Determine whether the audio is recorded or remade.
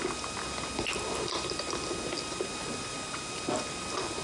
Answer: recorded